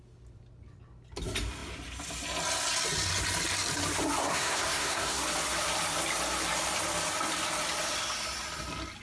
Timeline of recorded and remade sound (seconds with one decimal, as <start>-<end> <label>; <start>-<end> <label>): 0.0-4.2 recorded; 4.2-5.2 remade; 5.2-9.0 recorded